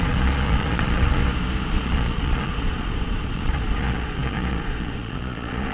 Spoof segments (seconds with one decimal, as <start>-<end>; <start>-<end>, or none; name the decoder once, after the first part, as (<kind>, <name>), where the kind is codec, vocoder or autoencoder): 0.0-1.2 (vocoder, Vocos); 1.7-5.7